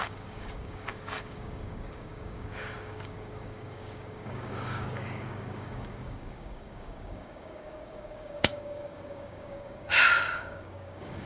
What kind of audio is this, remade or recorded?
remade